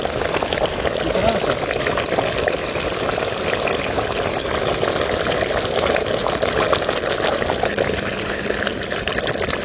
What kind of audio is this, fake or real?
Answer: real